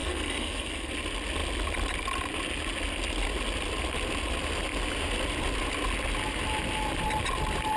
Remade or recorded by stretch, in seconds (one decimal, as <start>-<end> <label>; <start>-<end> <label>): 0.0-0.9 remade; 0.9-7.8 recorded